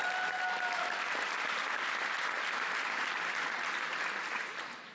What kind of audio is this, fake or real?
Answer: real